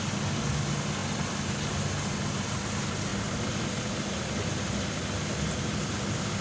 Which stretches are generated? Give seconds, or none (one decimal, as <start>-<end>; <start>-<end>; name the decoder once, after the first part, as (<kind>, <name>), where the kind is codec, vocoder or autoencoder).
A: none